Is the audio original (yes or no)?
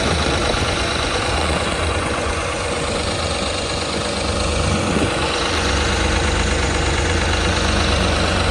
no